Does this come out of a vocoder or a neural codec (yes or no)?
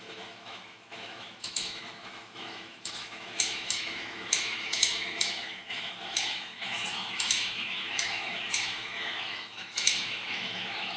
yes